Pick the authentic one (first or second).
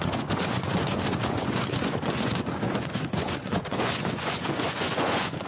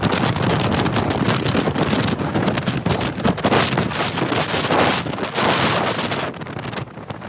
second